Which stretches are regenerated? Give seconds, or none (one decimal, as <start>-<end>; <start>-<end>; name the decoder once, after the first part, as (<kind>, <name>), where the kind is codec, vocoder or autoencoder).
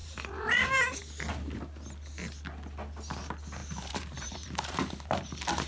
0.0-1.0 (vocoder, BigVGAN v2); 3.6-5.7